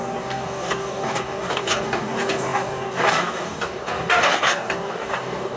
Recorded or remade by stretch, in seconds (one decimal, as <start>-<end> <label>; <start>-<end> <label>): 0.0-5.6 remade